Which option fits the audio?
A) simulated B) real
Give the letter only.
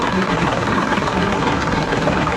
A